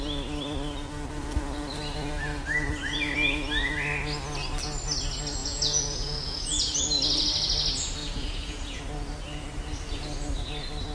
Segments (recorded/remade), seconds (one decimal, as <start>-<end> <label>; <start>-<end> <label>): 0.0-5.4 recorded; 5.4-6.8 remade; 6.8-8.0 recorded; 8.0-8.8 remade; 8.8-10.9 recorded